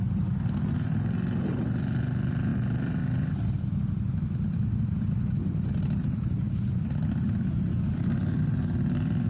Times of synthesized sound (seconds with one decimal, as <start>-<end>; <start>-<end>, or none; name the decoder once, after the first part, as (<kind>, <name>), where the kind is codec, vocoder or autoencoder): 7.9-8.5 (vocoder, BigVGAN v2)